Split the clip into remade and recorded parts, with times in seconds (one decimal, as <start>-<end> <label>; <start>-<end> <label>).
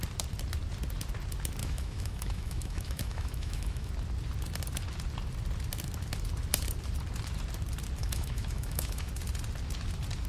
0.0-1.6 recorded; 1.6-3.9 remade; 3.9-8.0 recorded; 8.0-9.1 remade; 9.1-10.3 recorded